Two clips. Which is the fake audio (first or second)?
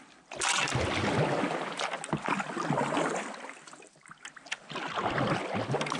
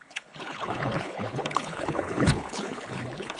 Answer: second